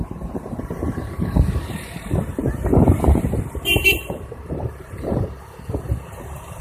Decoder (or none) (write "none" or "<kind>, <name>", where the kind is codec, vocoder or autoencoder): vocoder, BigVGAN v2